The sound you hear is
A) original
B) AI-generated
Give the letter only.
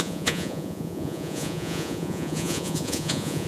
B